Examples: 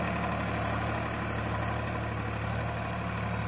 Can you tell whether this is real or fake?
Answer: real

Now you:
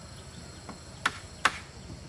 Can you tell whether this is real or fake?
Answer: real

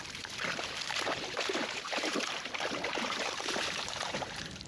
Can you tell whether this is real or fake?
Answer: fake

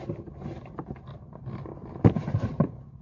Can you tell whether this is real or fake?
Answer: fake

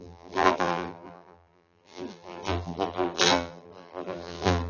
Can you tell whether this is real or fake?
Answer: fake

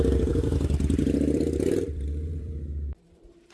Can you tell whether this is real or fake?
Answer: fake